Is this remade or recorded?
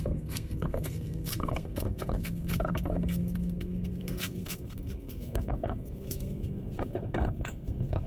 remade